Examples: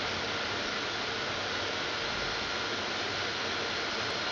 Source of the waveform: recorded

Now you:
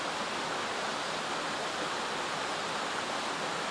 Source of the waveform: recorded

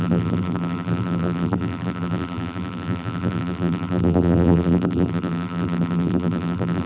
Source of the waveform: remade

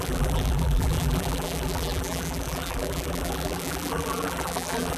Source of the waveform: remade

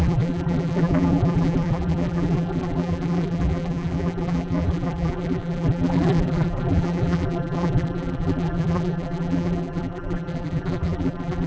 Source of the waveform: remade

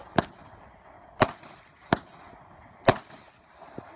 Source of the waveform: recorded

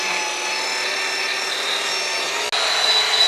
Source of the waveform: recorded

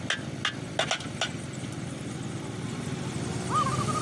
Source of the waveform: recorded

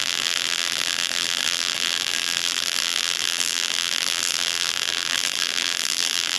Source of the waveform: remade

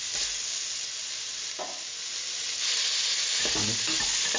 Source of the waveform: recorded